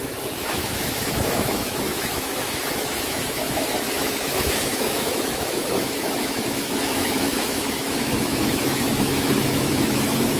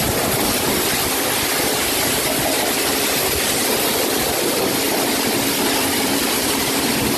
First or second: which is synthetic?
first